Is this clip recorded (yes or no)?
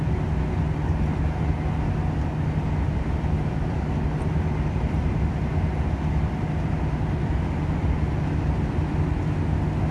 yes